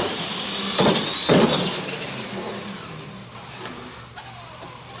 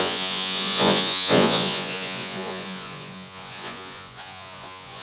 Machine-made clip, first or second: second